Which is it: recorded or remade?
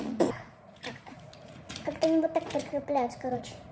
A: remade